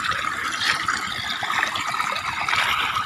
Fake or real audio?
real